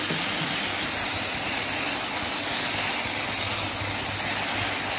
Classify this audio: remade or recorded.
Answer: recorded